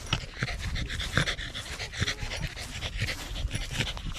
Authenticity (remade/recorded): recorded